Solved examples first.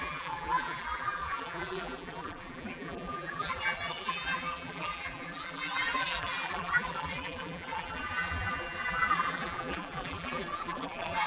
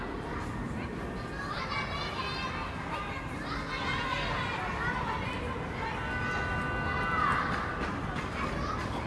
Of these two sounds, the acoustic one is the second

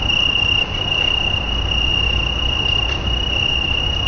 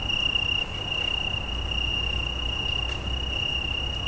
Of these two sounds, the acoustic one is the second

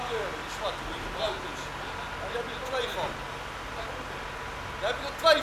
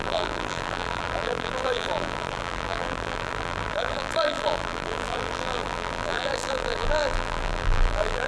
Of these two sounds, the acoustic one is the first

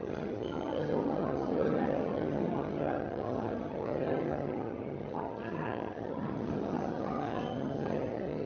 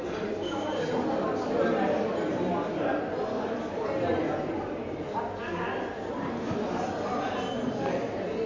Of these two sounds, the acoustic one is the second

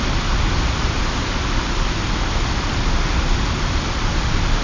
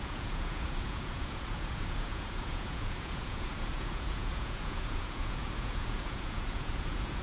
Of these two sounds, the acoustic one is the first